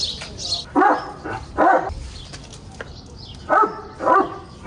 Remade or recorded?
recorded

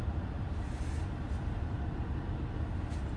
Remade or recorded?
recorded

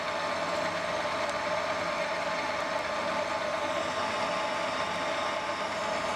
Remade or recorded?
recorded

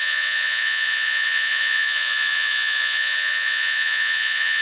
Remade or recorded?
remade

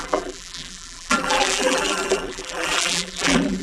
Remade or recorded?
remade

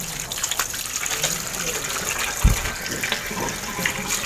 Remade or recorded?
recorded